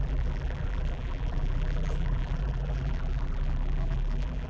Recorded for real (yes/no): no